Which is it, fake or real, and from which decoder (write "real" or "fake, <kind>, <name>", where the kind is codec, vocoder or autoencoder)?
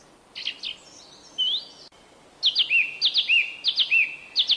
real